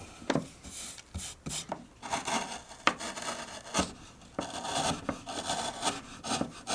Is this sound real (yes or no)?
no